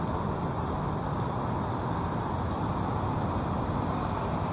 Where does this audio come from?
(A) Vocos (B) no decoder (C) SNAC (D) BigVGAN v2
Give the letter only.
B